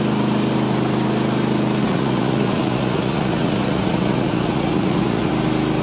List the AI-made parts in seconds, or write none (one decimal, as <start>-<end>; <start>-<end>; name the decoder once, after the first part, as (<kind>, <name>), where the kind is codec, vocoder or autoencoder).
1.8-5.3 (vocoder, Vocos)